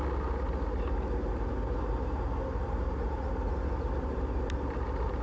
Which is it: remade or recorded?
recorded